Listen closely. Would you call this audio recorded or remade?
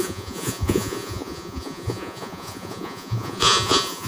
remade